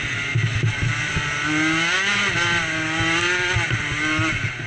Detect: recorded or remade recorded